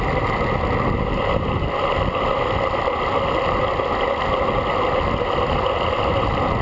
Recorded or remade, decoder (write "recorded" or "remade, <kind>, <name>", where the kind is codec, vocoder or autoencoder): recorded